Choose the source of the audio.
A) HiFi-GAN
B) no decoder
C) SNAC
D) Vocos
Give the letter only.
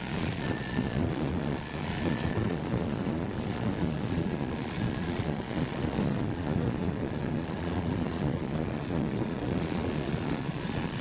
D